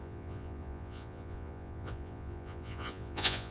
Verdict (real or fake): fake